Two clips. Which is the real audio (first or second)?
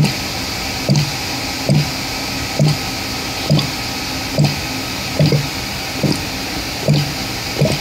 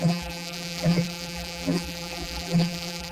first